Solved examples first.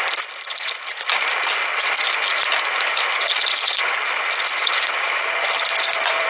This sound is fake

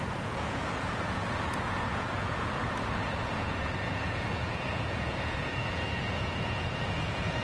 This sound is fake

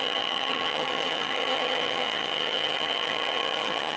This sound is fake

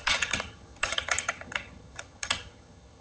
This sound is fake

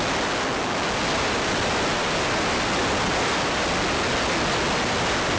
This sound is real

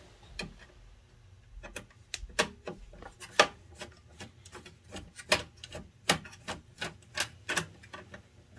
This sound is real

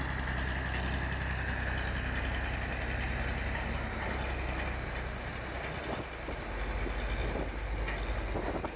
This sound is real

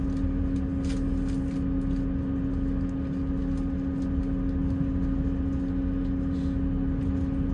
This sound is real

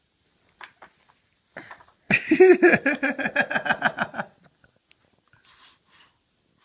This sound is real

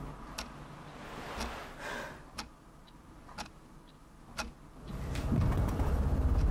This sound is real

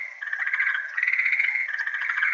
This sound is fake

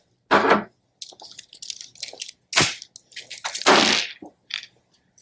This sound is real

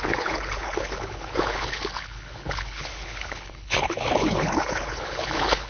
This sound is fake